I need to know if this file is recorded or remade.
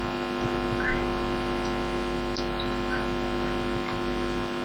recorded